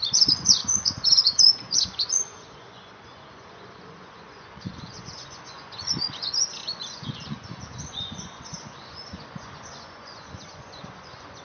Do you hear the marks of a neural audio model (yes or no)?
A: yes